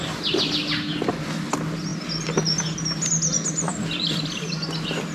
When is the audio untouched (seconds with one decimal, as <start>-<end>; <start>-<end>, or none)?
0.0-3.7; 4.3-5.1